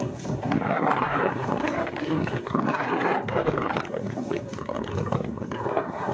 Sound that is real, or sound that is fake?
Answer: fake